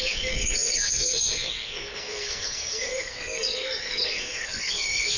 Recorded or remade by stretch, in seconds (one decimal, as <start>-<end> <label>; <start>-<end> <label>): 0.0-5.2 remade